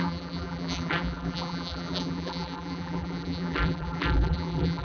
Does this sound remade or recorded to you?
remade